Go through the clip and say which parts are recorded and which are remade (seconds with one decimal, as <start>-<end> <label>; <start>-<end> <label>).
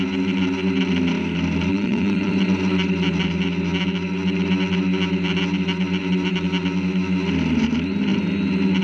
0.0-1.7 recorded; 1.7-2.3 remade; 2.3-8.8 recorded